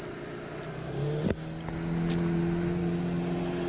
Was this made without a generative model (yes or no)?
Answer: yes